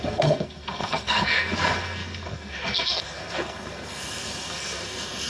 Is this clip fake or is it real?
fake